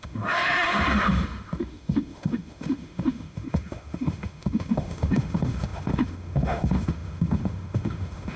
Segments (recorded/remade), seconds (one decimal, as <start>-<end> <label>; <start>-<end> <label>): 0.0-8.4 remade